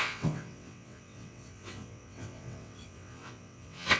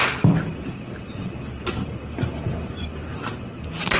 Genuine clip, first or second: second